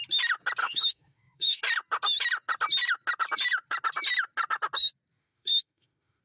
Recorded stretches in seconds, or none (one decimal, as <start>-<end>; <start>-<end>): 0.0-0.6; 1.6-5.2